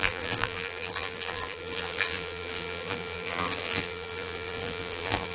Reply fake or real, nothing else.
fake